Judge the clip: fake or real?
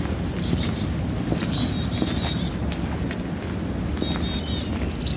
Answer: real